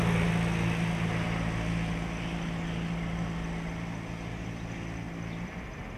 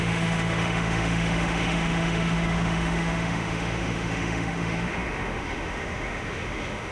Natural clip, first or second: first